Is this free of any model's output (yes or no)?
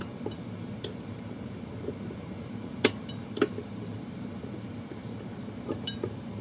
no